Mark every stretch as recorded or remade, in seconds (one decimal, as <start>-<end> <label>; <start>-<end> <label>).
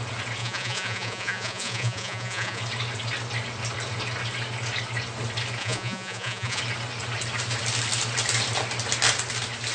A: 0.0-0.4 recorded; 0.4-2.6 remade; 2.6-5.6 recorded; 5.6-6.6 remade; 6.6-9.7 recorded